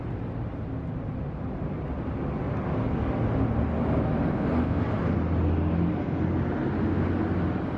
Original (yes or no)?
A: yes